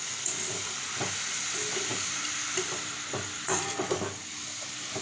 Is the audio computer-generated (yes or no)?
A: no